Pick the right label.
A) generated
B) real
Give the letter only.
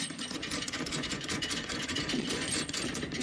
A